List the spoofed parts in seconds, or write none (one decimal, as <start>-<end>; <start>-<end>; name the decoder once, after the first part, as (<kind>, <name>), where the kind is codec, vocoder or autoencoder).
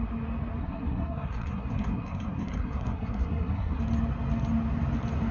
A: 0.6-3.8 (codec, SNAC)